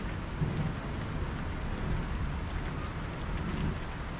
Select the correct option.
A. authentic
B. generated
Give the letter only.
A